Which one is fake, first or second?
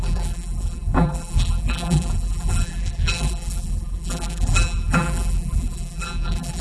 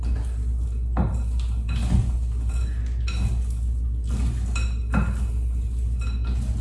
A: first